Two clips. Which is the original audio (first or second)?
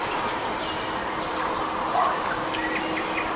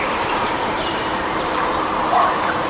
first